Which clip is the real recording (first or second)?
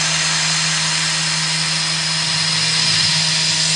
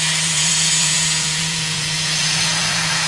first